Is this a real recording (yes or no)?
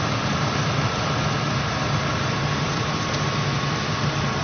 yes